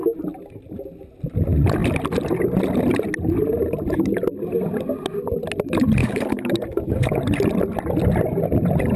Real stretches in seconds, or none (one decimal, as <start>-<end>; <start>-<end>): 0.0-6.0; 7.2-9.0